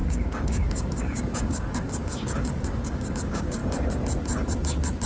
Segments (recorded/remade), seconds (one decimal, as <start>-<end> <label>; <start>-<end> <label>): 0.0-3.6 remade; 3.6-5.1 recorded